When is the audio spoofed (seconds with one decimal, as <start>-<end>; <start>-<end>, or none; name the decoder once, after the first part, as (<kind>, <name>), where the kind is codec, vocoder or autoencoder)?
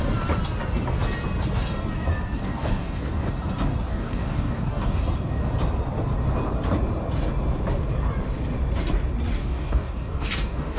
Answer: 2.4-3.3 (codec, DAC); 3.9-5.0; 9.4-10.8